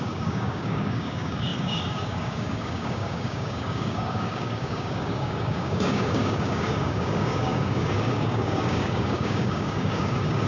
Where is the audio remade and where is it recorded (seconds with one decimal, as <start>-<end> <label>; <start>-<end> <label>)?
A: 0.0-10.5 remade